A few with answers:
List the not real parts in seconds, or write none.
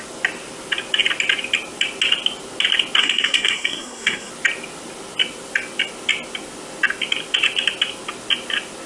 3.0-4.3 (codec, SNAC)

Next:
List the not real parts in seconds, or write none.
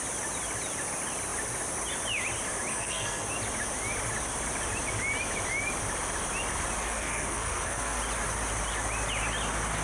2.7-3.3 (codec, SNAC); 6.8-8.0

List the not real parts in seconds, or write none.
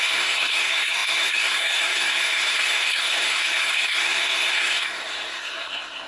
0.0-6.1 (codec, SNAC)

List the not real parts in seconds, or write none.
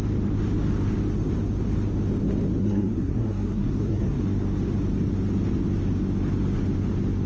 2.6-4.2 (codec, SNAC)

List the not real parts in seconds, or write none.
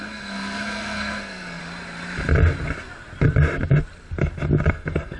0.0-1.6 (codec, SNAC); 4.7-5.2